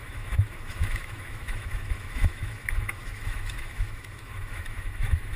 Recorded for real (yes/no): no